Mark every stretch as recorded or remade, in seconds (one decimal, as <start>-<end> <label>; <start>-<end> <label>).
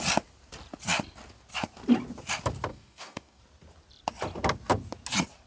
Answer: 0.0-2.7 recorded; 2.7-3.4 remade; 3.4-5.5 recorded